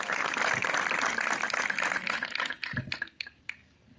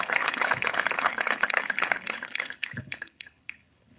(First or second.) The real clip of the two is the first